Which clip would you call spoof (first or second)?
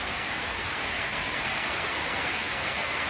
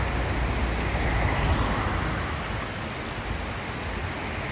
first